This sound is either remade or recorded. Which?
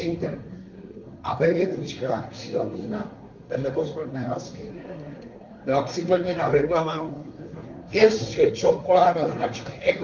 remade